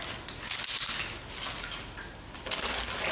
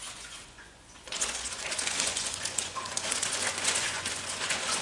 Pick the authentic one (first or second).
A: first